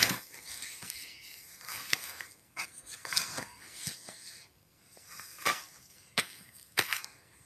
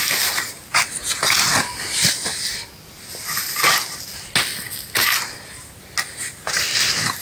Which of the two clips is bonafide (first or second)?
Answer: second